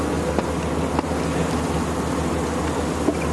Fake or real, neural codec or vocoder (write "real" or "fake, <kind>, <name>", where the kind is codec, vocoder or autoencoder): real